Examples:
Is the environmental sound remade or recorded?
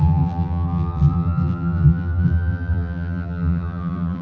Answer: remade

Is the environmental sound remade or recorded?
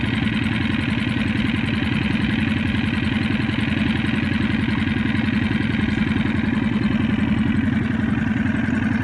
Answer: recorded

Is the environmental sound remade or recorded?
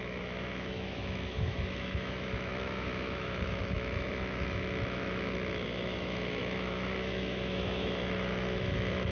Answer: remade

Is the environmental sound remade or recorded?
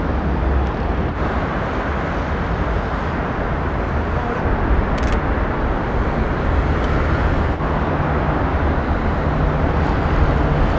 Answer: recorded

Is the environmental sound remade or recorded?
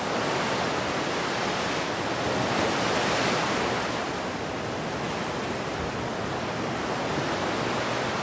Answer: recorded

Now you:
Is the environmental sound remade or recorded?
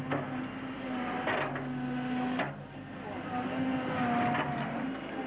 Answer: recorded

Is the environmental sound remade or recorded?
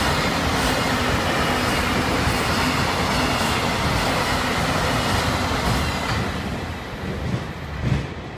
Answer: recorded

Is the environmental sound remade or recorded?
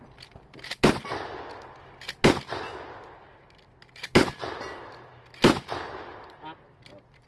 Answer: recorded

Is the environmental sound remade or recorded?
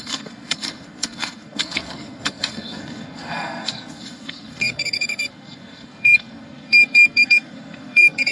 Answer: remade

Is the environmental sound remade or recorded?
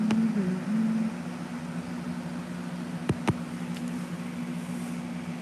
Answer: recorded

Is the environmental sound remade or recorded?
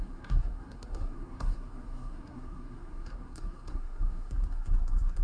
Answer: remade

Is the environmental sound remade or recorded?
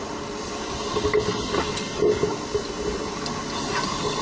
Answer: recorded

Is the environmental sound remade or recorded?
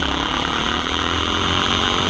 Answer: remade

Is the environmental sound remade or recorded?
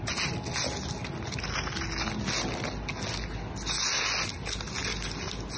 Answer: recorded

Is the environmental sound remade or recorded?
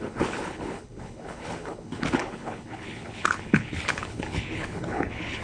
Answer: remade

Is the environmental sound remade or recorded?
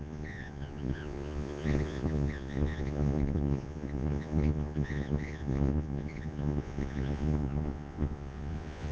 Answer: remade